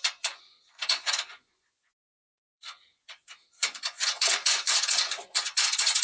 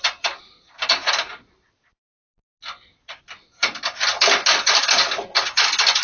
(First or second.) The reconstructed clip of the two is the first